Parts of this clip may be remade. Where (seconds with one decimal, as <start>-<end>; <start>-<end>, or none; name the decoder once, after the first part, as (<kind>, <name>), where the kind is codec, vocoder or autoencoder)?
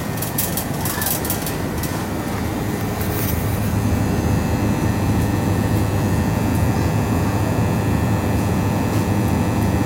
0.0-0.5 (vocoder, Vocos); 4.9-9.9